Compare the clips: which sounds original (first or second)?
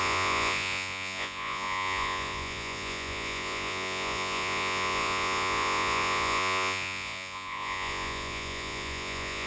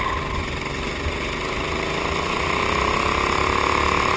second